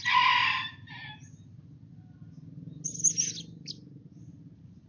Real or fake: real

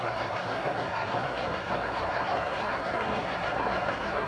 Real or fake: fake